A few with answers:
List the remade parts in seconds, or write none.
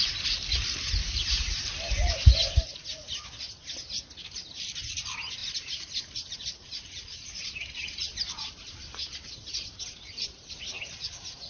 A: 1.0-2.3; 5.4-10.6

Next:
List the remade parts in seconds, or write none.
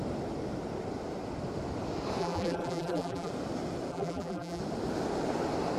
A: 2.2-3.3; 3.9-4.6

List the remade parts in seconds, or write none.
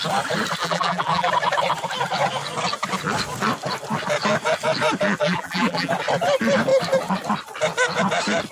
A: 0.6-1.3; 5.2-5.9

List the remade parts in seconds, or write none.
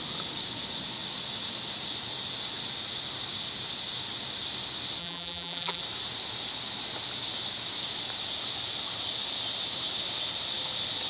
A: 5.0-5.8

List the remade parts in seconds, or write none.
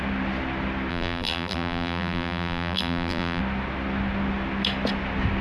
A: 0.9-3.4